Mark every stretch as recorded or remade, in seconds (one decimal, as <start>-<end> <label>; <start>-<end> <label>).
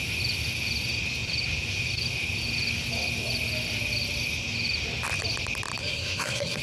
0.0-5.8 recorded; 5.8-6.6 remade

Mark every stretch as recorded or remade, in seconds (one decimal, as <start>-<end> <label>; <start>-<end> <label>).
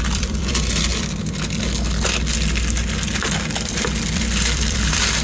0.0-0.9 remade; 0.9-4.0 recorded; 4.0-5.2 remade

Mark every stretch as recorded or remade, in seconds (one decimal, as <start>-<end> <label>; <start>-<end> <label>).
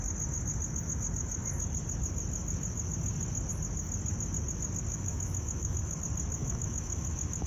0.0-4.9 recorded; 4.9-6.0 remade; 6.0-6.4 recorded; 6.4-7.5 remade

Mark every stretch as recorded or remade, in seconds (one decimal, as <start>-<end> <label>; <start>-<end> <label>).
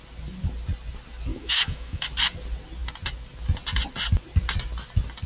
0.0-1.3 recorded; 1.3-2.1 remade; 2.1-5.3 recorded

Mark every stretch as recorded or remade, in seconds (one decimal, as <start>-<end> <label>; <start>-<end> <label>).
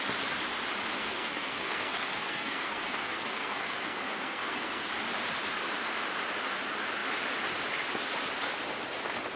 0.0-1.0 recorded; 1.0-4.9 remade; 4.9-9.4 recorded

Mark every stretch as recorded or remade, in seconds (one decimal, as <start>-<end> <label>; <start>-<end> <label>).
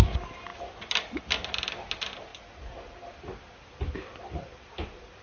0.0-5.2 recorded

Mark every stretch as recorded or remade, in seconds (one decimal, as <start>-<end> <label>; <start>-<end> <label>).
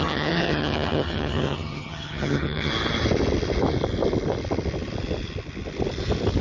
0.0-2.7 remade; 2.7-6.4 recorded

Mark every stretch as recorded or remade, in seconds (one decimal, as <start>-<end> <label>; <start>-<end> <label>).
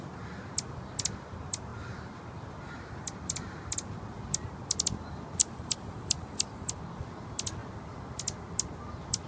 0.0-5.4 recorded; 5.4-6.8 remade; 6.8-9.3 recorded